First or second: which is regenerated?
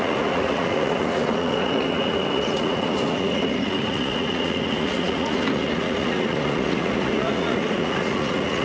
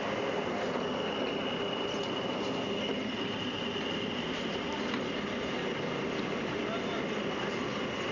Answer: first